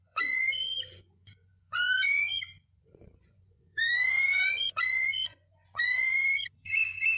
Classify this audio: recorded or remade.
remade